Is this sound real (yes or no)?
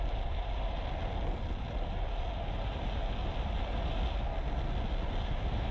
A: yes